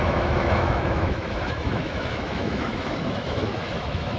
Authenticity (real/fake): fake